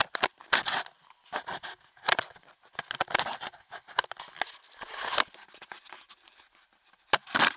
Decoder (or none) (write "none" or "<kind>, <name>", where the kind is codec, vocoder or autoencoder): none